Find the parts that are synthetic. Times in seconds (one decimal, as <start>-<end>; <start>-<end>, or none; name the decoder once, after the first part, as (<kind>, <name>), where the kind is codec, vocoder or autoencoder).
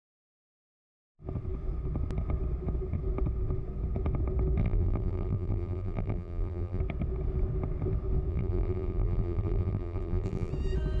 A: 4.6-6.8 (vocoder, BigVGAN v2); 8.3-10.5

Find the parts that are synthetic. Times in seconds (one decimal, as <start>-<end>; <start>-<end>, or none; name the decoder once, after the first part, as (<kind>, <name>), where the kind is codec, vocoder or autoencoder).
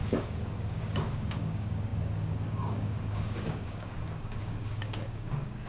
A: 0.0-5.7 (codec, DAC)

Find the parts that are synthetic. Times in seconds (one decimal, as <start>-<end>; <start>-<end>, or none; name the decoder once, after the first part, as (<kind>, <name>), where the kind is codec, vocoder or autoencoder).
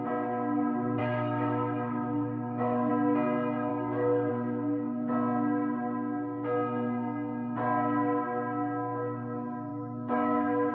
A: 1.0-2.9 (autoencoder, DAC-VAE); 3.7-4.3; 9.7-10.7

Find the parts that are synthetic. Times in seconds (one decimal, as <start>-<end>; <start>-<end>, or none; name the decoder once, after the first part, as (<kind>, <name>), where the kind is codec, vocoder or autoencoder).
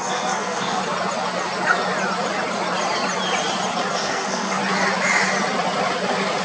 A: 0.0-0.8 (codec, SNAC); 3.9-4.6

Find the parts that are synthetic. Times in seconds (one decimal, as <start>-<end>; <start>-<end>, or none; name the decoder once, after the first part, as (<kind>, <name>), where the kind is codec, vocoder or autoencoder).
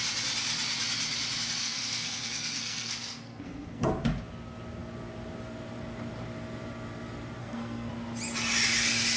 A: 1.6-3.9 (codec, SNAC); 7.4-7.9